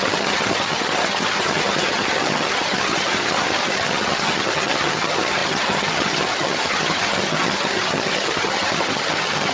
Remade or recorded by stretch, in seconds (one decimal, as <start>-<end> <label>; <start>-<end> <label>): 0.0-9.5 remade